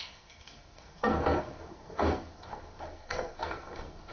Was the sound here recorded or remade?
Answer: remade